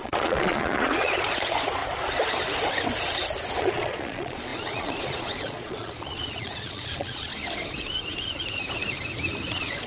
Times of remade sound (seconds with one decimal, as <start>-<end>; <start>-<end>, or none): 0.0-1.8; 3.6-7.3; 9.5-9.9